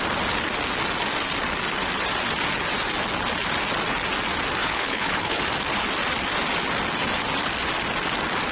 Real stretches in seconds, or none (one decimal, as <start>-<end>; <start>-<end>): 0.0-4.6; 5.4-8.5